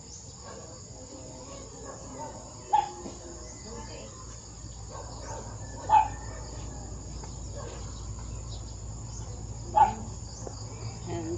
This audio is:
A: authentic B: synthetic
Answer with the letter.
A